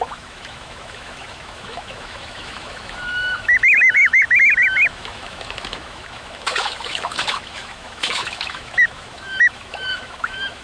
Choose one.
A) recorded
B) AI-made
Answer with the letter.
B